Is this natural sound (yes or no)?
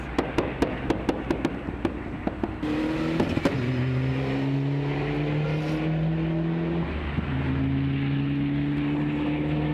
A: yes